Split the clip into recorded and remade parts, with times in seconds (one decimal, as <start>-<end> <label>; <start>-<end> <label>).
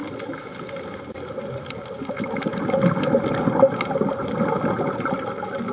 0.0-5.7 recorded